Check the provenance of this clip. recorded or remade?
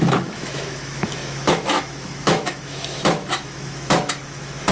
remade